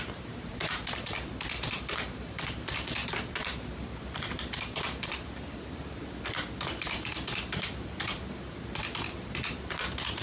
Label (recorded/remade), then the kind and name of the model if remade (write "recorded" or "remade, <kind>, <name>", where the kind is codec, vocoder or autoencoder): remade, vocoder, BigVGAN v2